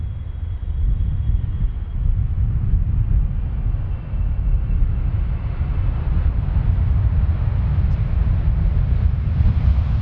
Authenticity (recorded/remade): recorded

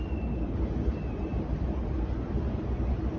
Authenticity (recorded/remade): recorded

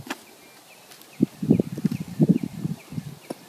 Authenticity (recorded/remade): recorded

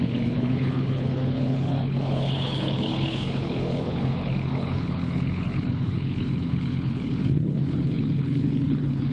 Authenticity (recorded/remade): remade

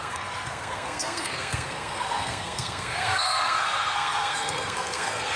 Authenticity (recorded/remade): remade